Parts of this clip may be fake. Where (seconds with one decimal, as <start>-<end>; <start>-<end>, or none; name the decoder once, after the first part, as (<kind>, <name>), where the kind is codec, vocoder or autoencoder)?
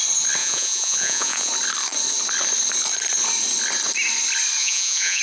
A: 0.4-1.5 (vocoder, Vocos); 4.6-5.2